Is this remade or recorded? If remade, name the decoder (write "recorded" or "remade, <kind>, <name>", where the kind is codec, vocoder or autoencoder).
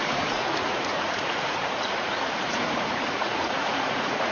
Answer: remade, vocoder, Vocos